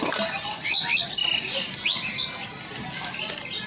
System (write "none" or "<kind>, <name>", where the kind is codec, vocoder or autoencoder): none